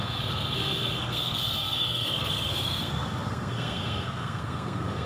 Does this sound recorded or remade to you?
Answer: remade